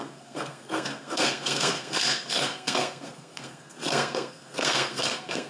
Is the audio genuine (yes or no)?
no